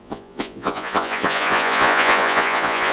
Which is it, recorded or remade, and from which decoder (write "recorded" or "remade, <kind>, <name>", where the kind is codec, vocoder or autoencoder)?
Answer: remade, vocoder, Vocos